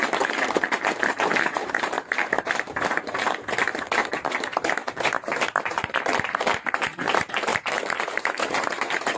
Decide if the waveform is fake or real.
fake